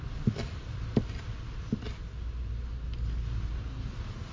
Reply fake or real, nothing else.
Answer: real